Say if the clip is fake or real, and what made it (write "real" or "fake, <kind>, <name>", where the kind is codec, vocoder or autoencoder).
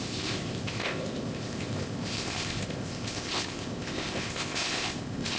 fake, codec, ZipCodec